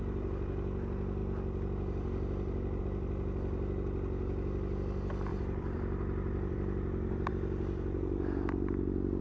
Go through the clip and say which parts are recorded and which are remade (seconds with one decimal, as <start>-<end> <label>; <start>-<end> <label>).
0.0-5.3 recorded; 5.3-7.3 remade; 7.3-9.2 recorded